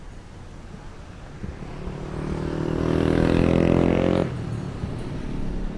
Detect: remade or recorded recorded